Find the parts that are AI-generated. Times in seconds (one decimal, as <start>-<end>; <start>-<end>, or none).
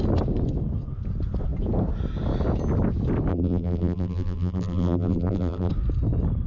3.3-5.7